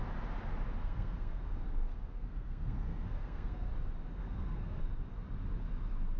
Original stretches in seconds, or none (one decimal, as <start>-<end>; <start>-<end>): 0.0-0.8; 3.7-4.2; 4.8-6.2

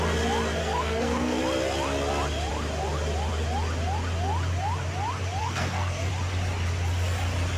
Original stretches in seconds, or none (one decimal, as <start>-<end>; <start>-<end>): 0.0-0.6; 1.4-5.4; 6.1-7.6

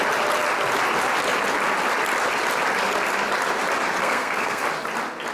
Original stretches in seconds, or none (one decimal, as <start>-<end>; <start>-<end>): 0.0-4.0; 4.6-5.3